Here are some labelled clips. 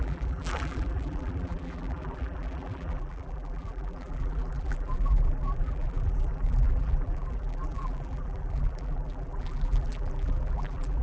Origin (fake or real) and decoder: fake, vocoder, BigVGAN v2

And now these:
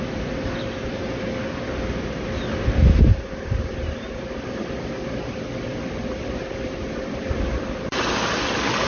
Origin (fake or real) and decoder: fake, vocoder, BigVGAN v2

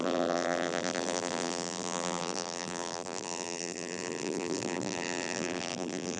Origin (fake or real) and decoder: fake, vocoder, BigVGAN v2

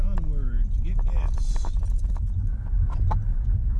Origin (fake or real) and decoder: real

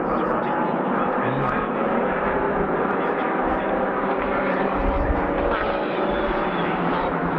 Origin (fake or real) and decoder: fake, vocoder, BigVGAN v2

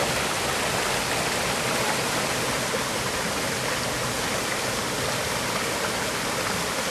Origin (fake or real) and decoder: real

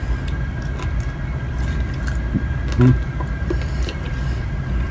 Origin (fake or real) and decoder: real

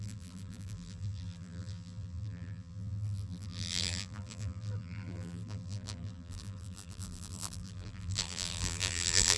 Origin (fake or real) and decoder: fake, vocoder, BigVGAN v2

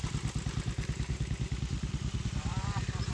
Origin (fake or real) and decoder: real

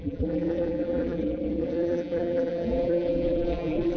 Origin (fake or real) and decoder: fake, vocoder, BigVGAN v2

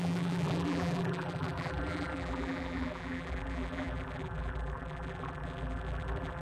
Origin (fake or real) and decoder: fake, vocoder, BigVGAN v2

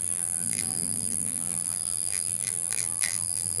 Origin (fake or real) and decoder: fake, vocoder, BigVGAN v2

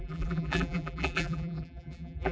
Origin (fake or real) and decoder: fake, vocoder, BigVGAN v2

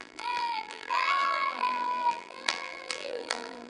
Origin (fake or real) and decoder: fake, vocoder, BigVGAN v2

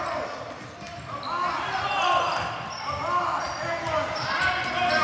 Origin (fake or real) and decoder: real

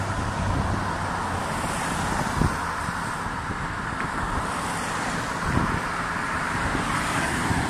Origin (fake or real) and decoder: real